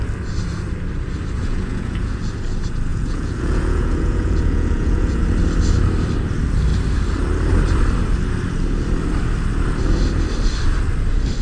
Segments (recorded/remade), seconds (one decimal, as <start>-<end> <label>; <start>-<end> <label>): 0.0-1.4 recorded; 1.4-2.2 remade; 2.2-2.9 recorded; 2.9-5.2 remade; 5.2-11.4 recorded